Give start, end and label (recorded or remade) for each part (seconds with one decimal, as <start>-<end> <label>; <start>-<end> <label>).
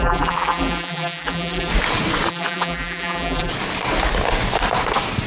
0.0-1.7 remade; 1.7-2.3 recorded; 2.3-3.5 remade; 3.5-5.3 recorded